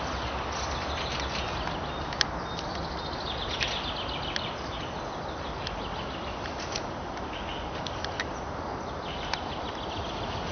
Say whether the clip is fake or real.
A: real